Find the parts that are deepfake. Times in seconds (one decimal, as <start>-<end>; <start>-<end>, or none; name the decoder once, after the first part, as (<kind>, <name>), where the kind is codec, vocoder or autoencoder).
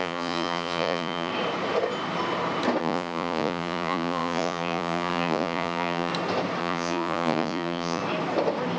0.0-1.3 (vocoder, Vocos); 2.8-6.1; 6.6-8.0